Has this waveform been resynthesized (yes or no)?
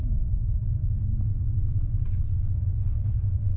no